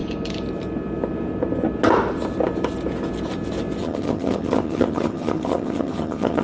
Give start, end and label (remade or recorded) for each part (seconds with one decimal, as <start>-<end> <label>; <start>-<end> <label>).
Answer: 0.0-3.8 recorded; 3.8-6.4 remade